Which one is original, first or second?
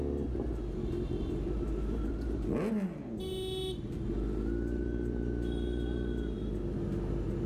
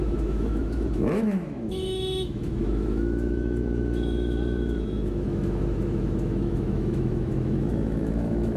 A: first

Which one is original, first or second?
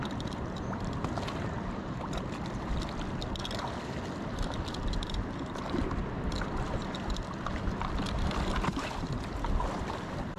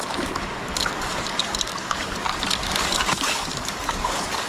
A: first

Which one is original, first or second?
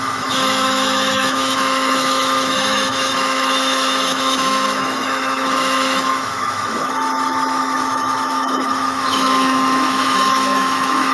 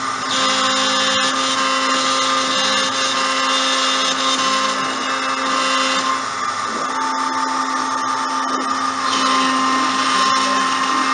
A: second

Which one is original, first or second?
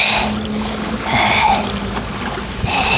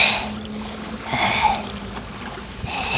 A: first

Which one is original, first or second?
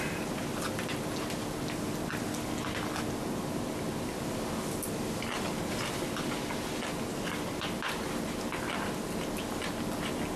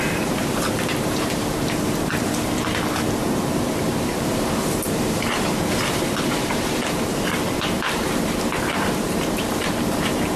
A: first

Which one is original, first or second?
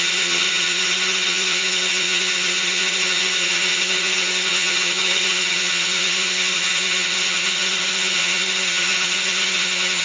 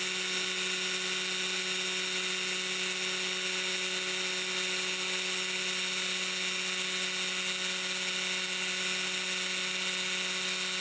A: second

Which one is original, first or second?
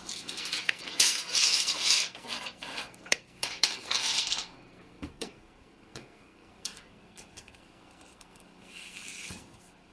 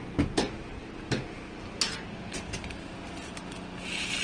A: second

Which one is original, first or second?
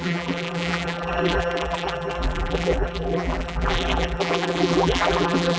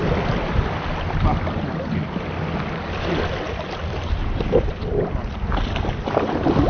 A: second